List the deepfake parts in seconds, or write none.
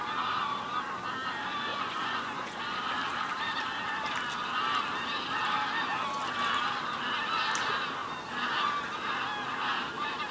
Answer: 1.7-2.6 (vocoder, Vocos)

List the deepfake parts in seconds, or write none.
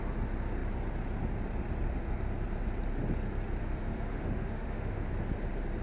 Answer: 3.6-5.1 (autoencoder, DAC-VAE)